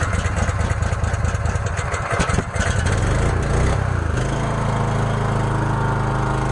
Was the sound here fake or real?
real